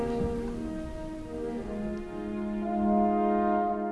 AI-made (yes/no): no